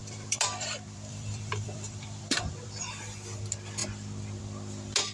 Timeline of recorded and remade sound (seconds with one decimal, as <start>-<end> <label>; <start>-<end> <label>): 0.0-2.9 remade; 2.9-5.1 recorded